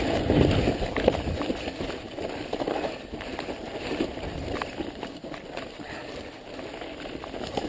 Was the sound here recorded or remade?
recorded